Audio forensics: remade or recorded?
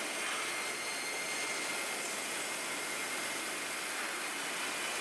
recorded